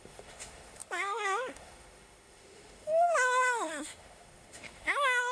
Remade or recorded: remade